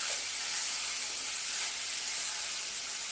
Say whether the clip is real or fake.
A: real